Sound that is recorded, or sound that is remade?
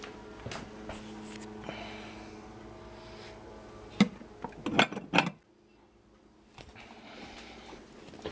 recorded